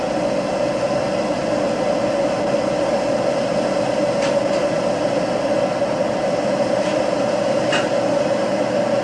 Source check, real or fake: real